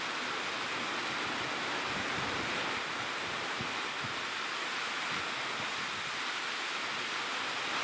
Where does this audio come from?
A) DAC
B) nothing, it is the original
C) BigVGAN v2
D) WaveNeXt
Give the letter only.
B